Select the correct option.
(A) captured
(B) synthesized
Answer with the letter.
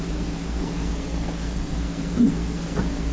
B